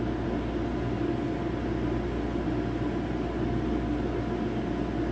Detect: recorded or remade recorded